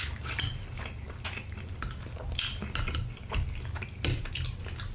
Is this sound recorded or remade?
recorded